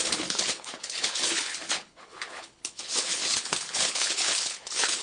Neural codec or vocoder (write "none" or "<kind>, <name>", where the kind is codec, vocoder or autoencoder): codec, HILCodec